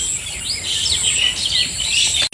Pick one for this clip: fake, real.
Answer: real